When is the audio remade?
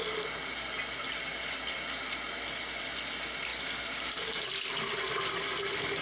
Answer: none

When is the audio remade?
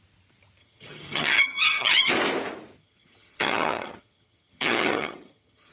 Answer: 0.6-2.1; 2.8-5.7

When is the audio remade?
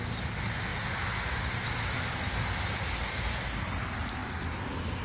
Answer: none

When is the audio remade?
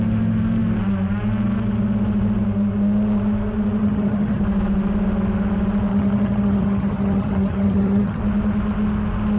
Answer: 3.8-4.4; 5.9-8.2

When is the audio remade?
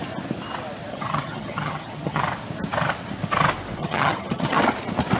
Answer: 0.9-2.2; 3.8-4.6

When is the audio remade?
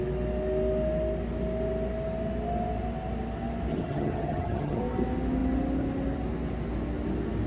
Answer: 3.7-4.8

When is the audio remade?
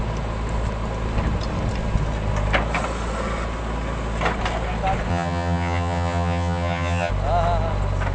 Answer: 5.1-7.1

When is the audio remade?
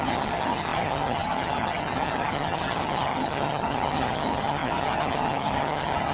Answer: 0.0-6.1